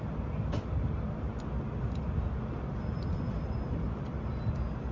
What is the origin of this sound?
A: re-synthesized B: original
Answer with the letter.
B